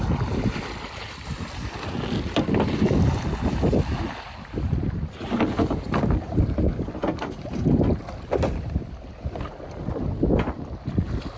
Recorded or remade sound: recorded